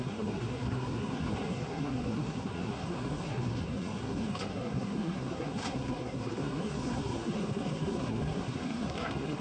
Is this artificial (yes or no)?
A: yes